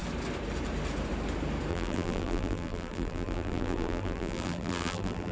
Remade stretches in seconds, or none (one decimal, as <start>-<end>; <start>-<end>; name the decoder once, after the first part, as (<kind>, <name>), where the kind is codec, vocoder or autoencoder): 1.7-5.3 (vocoder, BigVGAN v2)